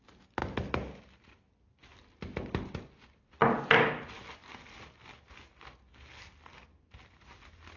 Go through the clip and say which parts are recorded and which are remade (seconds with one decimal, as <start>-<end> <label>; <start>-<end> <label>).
0.0-7.8 recorded